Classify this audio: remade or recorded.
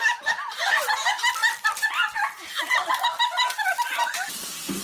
recorded